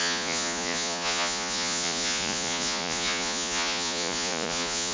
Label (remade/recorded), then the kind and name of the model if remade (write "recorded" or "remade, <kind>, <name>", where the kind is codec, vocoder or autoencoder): remade, vocoder, Vocos